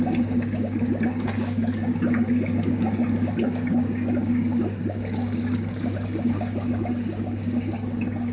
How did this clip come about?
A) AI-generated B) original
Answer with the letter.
A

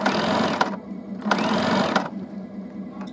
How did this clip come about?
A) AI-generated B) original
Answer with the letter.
B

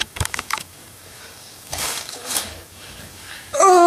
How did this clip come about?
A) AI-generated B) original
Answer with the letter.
A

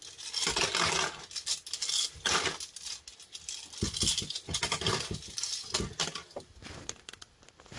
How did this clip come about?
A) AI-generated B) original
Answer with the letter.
B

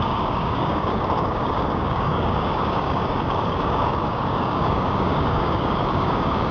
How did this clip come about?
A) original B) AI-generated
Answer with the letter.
B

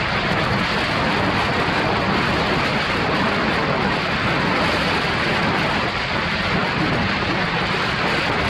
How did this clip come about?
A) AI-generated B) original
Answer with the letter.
B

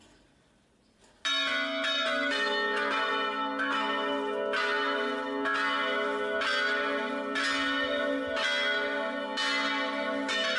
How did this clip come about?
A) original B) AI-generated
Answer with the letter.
A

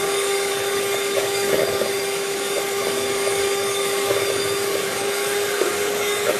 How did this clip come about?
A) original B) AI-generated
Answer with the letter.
B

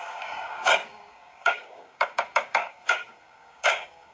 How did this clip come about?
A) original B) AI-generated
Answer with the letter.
B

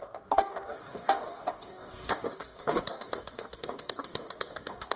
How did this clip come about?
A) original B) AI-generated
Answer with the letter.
B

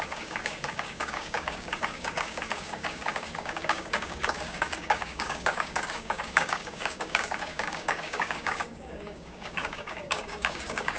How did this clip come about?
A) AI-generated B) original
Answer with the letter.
A